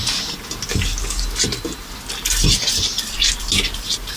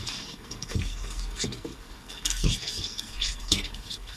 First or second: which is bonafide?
first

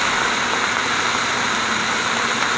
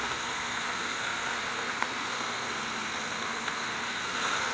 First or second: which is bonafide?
first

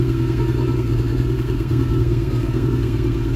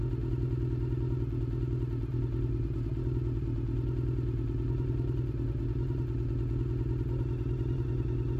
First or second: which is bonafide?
second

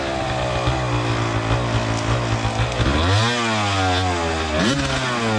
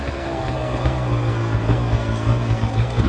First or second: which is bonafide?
first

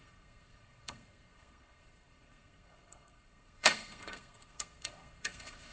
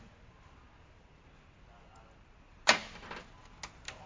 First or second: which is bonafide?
second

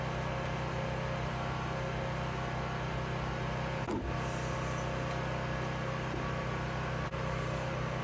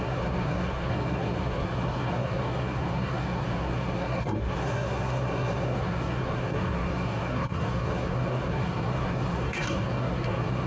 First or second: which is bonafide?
first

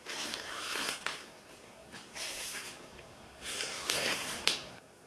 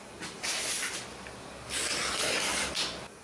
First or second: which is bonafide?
second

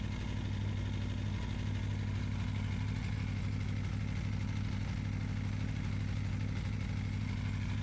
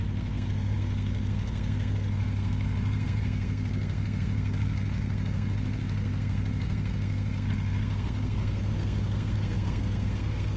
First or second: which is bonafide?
first